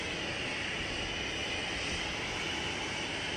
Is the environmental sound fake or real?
real